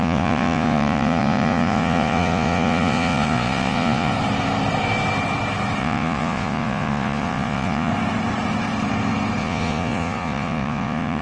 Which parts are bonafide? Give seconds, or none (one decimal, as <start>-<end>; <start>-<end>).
4.1-5.8; 7.9-9.4